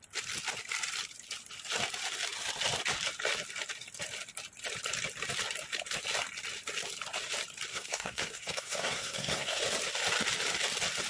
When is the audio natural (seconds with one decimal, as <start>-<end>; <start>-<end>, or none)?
0.0-7.7; 9.6-11.1

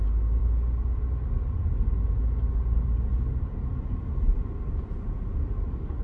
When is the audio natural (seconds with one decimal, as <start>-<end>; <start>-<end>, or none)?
0.0-6.0

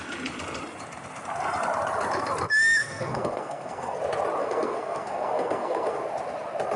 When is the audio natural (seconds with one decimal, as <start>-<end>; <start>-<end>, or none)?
0.0-2.8; 4.0-4.4; 6.0-6.8

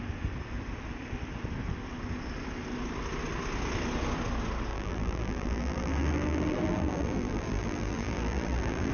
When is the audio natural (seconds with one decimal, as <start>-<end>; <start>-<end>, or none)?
0.0-4.7